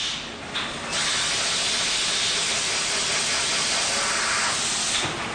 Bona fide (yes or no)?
yes